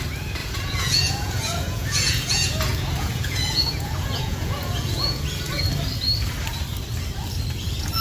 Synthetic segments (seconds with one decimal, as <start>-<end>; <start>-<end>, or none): 0.4-5.2